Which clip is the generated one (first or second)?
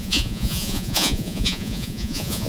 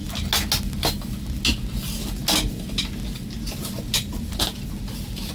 first